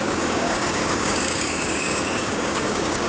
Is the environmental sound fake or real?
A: fake